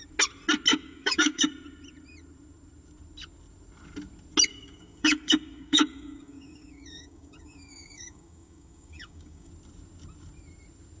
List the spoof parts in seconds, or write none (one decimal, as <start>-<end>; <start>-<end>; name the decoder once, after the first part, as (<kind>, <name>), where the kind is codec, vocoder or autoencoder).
0.7-1.5 (codec, DAC); 4.5-9.5